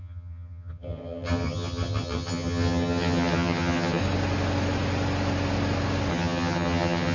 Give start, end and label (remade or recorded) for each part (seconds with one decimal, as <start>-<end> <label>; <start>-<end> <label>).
0.0-4.0 remade; 4.0-6.1 recorded; 6.1-7.1 remade